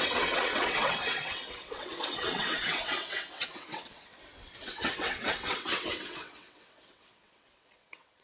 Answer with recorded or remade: remade